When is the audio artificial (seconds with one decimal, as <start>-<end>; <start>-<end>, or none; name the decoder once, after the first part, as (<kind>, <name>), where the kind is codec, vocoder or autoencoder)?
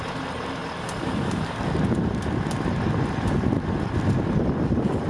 none